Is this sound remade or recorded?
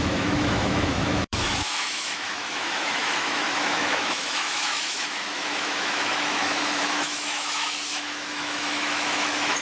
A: remade